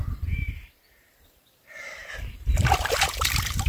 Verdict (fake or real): fake